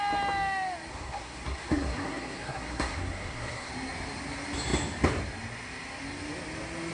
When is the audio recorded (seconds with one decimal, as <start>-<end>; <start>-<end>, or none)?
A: 0.0-0.9; 3.7-6.9